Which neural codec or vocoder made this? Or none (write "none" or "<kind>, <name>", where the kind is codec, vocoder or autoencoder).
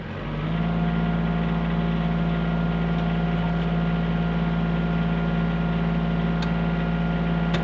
none